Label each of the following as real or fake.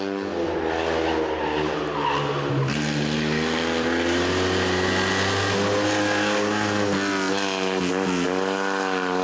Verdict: real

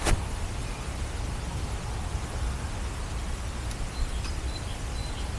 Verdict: real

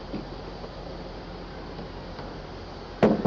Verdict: real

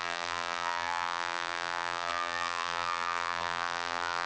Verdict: fake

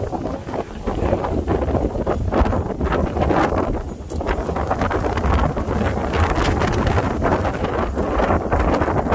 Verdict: real